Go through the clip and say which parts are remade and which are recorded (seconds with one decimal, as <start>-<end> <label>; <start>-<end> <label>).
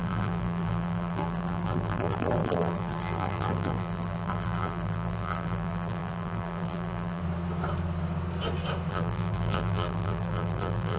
0.0-7.2 remade; 7.2-8.9 recorded; 8.9-11.0 remade